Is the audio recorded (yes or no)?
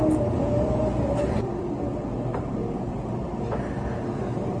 yes